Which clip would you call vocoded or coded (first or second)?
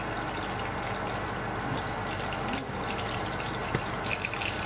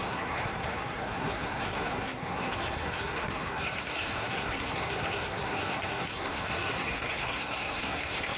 second